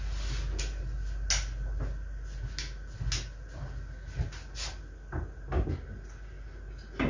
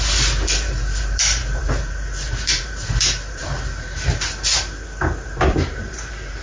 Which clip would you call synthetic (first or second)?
second